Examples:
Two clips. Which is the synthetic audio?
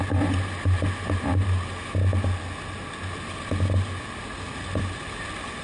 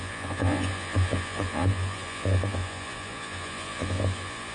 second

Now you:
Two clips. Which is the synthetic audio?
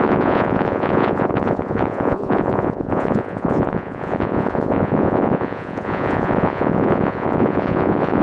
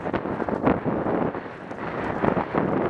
first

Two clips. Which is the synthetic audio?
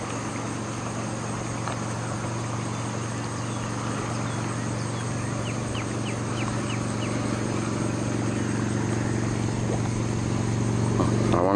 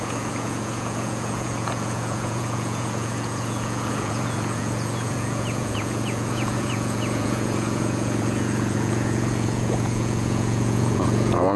second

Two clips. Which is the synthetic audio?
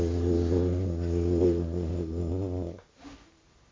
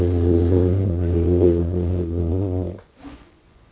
second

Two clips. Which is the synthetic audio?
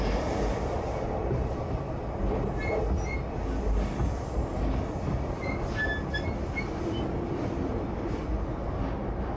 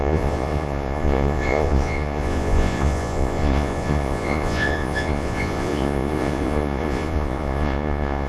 second